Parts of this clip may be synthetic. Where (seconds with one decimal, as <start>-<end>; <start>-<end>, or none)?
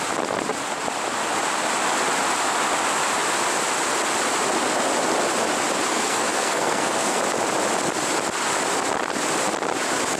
5.9-7.2